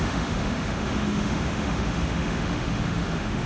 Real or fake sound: fake